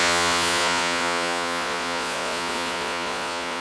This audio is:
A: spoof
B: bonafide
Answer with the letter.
A